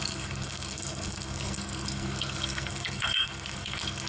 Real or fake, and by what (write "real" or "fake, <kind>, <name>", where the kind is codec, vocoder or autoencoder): fake, codec, SNAC